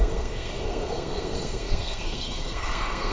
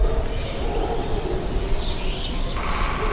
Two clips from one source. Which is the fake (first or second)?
first